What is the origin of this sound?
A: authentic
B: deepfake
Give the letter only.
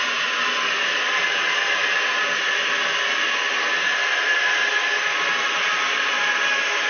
A